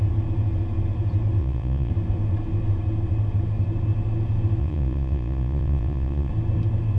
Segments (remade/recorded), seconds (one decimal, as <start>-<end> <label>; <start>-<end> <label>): 0.0-1.4 recorded; 1.4-1.9 remade; 1.9-4.6 recorded; 4.6-6.3 remade; 6.3-7.0 recorded